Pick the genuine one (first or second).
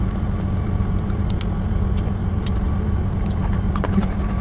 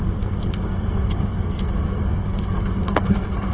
first